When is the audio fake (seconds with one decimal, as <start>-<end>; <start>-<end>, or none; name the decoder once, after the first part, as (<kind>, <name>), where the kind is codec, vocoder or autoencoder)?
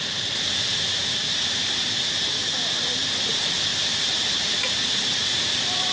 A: 0.0-3.7 (vocoder, BigVGAN v2); 4.4-5.9